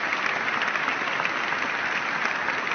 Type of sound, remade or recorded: recorded